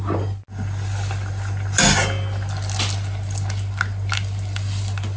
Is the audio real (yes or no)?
yes